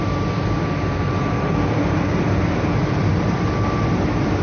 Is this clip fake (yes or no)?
no